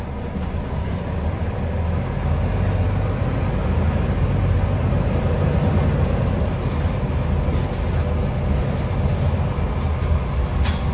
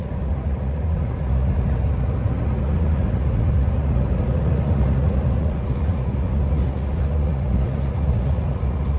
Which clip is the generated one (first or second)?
second